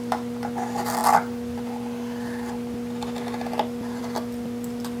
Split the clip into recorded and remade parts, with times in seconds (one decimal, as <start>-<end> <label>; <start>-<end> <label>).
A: 0.0-5.0 recorded